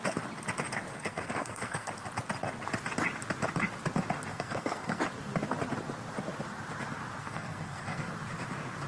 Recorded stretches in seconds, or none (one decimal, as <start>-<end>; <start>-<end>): 0.0-0.9; 1.9-4.3; 5.0-7.2; 8.1-8.9